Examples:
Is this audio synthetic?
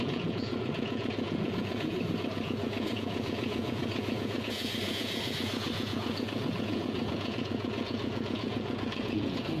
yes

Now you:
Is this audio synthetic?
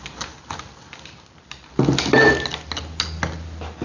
no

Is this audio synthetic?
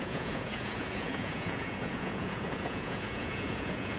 yes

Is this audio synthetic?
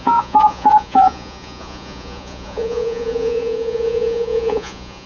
yes